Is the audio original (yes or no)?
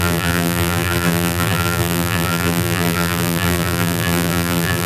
no